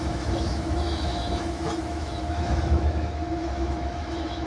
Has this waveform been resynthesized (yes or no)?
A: yes